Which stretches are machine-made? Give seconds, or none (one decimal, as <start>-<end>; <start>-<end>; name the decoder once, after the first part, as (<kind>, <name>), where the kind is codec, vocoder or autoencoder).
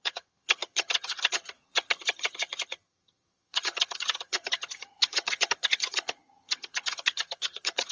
0.0-7.9 (vocoder, HiFi-GAN)